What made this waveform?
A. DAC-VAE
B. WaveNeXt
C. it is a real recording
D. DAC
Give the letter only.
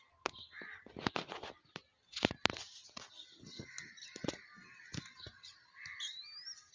C